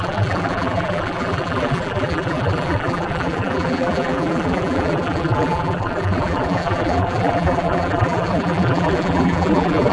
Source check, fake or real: fake